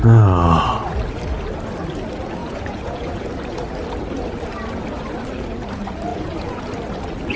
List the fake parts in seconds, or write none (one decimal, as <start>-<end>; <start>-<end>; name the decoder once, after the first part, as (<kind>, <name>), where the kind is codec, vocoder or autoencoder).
2.4-3.2 (vocoder, Vocos); 6.1-6.6